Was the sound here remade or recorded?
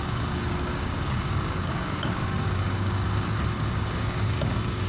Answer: remade